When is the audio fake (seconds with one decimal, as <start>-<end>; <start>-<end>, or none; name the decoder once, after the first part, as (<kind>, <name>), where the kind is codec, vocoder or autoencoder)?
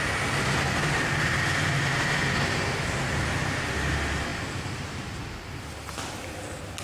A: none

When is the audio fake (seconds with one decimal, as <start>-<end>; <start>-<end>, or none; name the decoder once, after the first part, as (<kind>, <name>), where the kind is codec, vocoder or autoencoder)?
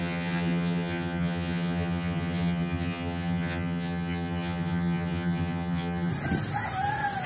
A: 0.0-6.1 (vocoder, HiFi-GAN)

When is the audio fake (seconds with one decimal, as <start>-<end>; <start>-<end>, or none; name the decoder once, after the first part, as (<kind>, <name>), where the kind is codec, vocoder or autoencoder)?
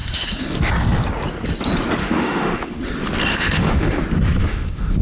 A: 0.0-0.7 (autoencoder, DAC-VAE); 2.0-2.9; 3.3-4.0; 4.4-5.0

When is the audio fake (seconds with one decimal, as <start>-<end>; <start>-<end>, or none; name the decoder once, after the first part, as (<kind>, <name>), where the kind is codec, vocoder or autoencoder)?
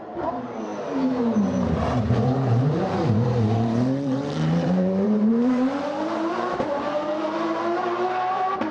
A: 0.0-0.7 (vocoder, BigVGAN v2); 2.0-8.7